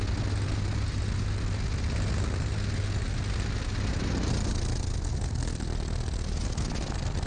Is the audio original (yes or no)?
yes